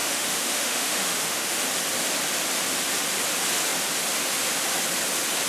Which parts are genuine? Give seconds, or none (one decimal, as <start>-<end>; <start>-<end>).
1.6-5.5